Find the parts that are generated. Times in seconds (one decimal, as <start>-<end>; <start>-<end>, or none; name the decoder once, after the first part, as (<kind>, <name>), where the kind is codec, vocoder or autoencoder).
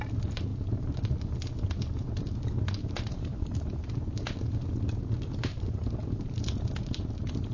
2.8-3.8 (vocoder, BigVGAN v2); 5.5-6.4